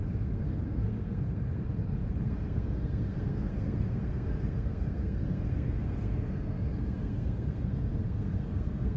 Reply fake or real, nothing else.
fake